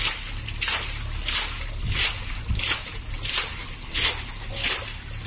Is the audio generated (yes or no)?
no